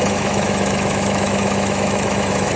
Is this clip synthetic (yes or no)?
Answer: yes